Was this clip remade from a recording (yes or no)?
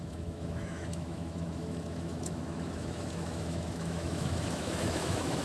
yes